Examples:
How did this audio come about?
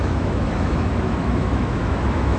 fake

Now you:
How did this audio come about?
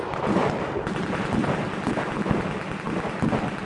real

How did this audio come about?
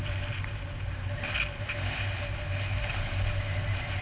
real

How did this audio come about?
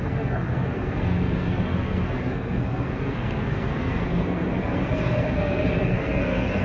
fake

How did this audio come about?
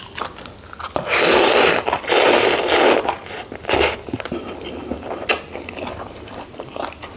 real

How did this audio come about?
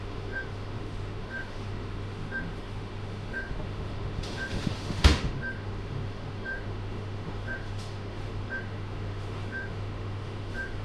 fake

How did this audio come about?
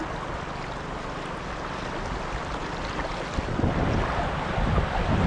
real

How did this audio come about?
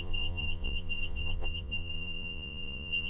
fake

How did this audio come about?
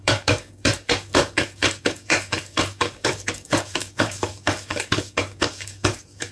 fake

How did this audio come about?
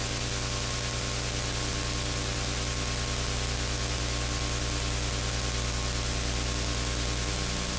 real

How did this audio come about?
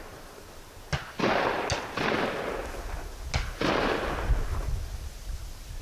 real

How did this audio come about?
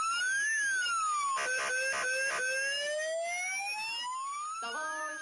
real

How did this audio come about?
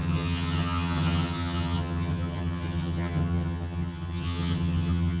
fake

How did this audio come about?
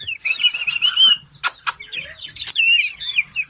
real